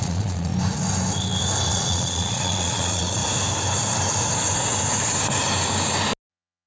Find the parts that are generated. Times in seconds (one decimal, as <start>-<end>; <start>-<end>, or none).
0.0-0.5; 1.7-3.2; 6.3-6.7